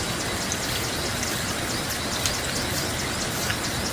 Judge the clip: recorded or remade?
recorded